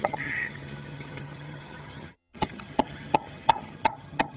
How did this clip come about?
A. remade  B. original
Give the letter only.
A